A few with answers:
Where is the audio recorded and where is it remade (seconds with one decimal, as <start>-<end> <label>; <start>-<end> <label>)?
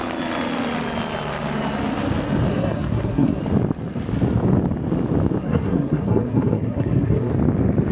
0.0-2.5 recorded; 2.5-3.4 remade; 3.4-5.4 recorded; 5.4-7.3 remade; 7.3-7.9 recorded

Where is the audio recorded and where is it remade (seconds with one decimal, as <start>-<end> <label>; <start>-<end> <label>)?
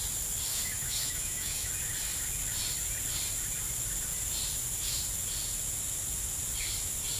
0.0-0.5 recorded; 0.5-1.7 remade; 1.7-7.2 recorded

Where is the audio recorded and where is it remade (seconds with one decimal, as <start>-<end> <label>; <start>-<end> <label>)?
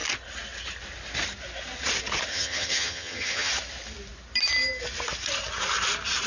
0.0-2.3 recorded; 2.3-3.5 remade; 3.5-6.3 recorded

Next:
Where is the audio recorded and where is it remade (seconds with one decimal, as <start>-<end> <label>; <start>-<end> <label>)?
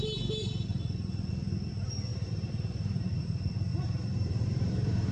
0.0-2.1 recorded; 2.1-3.2 remade; 3.2-3.7 recorded; 3.7-5.1 remade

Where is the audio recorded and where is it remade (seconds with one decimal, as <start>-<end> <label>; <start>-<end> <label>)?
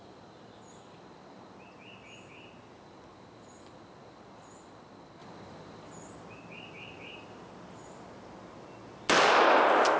0.0-10.0 recorded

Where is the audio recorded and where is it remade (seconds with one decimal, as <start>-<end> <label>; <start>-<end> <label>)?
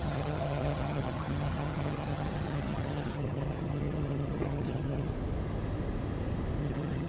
0.0-5.1 remade; 5.1-6.6 recorded; 6.6-7.1 remade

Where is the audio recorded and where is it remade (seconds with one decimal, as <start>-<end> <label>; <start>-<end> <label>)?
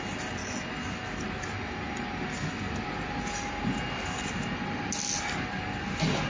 0.0-6.3 recorded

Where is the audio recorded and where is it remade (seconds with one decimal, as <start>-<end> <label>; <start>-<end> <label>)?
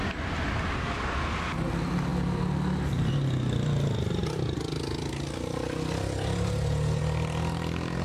0.0-8.0 recorded